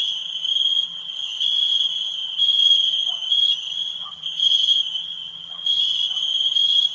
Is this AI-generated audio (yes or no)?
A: yes